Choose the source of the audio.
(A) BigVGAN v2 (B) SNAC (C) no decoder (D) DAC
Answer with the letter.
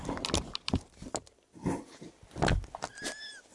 C